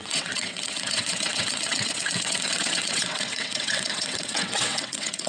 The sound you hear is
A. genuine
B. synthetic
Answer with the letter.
B